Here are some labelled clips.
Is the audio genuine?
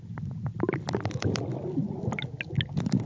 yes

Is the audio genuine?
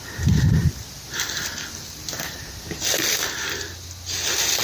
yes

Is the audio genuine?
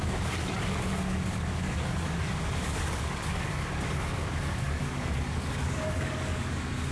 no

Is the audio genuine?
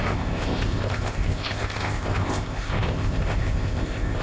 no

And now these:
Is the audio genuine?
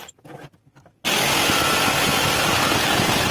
yes